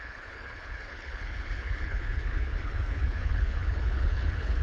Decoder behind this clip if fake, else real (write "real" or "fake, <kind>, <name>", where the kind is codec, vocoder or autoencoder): fake, codec, HILCodec